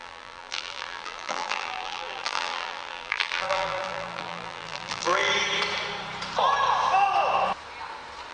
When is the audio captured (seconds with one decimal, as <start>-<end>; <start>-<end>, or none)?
5.3-8.3